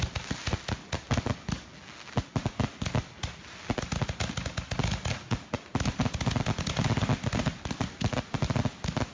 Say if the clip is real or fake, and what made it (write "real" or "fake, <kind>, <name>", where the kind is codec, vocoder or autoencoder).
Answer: real